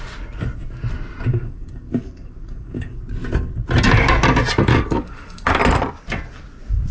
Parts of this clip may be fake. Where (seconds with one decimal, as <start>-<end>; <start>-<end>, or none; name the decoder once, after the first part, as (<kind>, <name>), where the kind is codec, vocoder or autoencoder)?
1.3-3.0 (codec, DAC); 4.7-5.5